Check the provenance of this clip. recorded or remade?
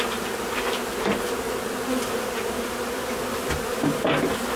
recorded